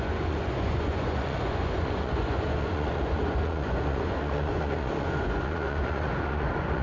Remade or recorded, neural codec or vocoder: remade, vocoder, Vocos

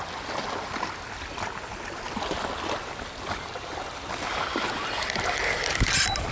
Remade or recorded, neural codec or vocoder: recorded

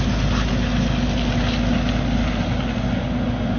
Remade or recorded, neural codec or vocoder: recorded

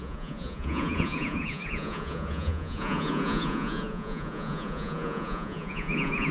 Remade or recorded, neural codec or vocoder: remade, vocoder, Vocos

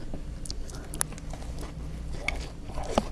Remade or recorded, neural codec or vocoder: recorded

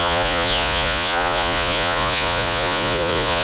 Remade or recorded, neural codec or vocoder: remade, vocoder, Vocos